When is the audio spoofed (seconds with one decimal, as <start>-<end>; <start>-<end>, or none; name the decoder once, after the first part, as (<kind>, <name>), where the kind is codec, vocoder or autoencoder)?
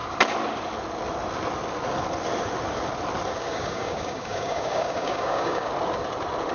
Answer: 3.4-5.7 (codec, DAC)